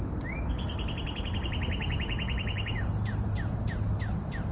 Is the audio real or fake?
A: real